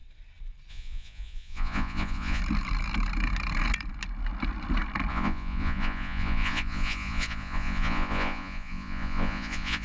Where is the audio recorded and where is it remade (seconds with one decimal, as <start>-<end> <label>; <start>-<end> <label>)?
0.0-0.7 recorded; 0.7-2.4 remade; 2.4-5.1 recorded; 5.1-9.8 remade

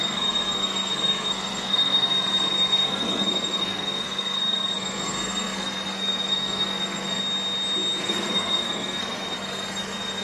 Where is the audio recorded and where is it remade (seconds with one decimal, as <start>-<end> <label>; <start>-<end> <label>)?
0.0-7.2 remade; 7.2-8.0 recorded; 8.0-10.2 remade

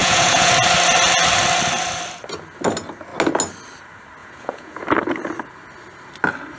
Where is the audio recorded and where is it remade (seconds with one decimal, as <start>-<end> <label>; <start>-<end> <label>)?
0.0-0.5 remade; 0.5-4.2 recorded; 4.2-4.8 remade; 4.8-6.6 recorded

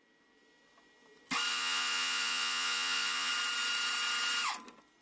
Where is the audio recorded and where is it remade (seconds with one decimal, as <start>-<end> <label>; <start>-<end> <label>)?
0.0-1.5 recorded; 1.5-3.3 remade; 3.3-5.0 recorded

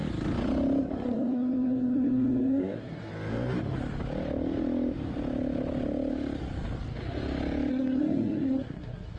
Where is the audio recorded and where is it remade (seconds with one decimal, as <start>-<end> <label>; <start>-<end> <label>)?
0.0-0.8 recorded; 0.8-3.1 remade; 3.1-7.7 recorded; 7.7-9.2 remade

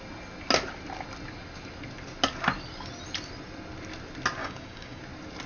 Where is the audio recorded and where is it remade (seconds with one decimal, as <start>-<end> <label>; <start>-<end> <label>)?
0.0-4.4 recorded; 4.4-5.0 remade; 5.0-5.5 recorded